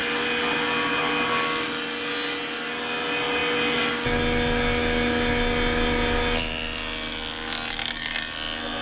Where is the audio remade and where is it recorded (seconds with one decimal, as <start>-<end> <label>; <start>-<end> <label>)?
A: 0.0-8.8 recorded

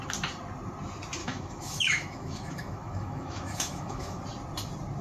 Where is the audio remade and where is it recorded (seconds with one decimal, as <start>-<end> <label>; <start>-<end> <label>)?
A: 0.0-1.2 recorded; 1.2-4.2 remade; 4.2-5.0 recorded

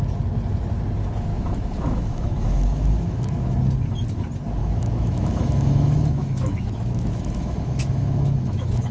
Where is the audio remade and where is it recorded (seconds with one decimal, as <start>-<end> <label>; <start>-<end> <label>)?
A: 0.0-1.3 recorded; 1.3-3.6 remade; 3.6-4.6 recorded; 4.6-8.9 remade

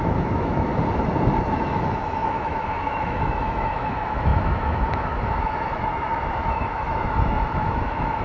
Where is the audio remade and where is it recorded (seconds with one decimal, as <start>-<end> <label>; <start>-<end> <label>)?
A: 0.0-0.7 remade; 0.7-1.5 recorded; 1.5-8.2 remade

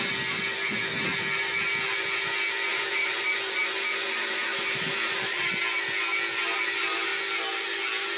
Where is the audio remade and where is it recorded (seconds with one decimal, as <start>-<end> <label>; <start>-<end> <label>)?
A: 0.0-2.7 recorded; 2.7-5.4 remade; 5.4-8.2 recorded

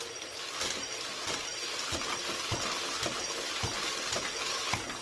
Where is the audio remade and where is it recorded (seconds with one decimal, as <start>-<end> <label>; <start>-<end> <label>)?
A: 0.0-5.0 recorded

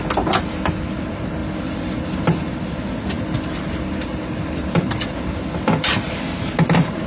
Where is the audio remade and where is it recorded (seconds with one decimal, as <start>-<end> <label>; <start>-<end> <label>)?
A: 0.0-1.4 recorded; 1.4-5.7 remade; 5.7-7.1 recorded

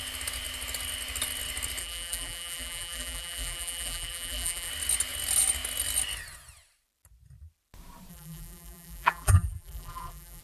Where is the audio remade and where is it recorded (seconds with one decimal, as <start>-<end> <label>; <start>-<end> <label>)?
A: 0.0-1.8 recorded; 1.8-4.7 remade; 4.7-8.1 recorded; 8.1-10.4 remade